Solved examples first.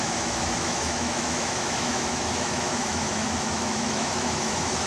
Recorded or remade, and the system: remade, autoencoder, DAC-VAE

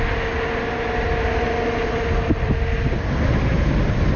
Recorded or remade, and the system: recorded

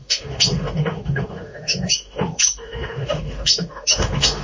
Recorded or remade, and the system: remade, autoencoder, DAC-VAE